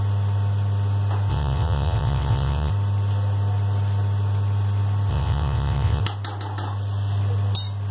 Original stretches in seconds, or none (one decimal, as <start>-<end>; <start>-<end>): 0.0-1.3; 2.7-5.1; 6.0-7.9